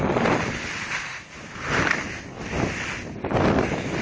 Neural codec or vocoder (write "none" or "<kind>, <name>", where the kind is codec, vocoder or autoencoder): none